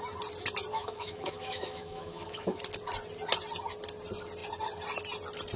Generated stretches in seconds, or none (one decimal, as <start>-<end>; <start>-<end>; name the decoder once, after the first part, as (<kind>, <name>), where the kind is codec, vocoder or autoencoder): 0.7-2.6 (autoencoder, DAC-VAE)